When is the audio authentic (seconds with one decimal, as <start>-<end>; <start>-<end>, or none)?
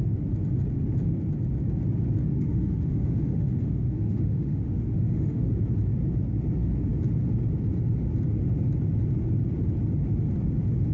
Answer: 0.0-2.3; 5.6-10.9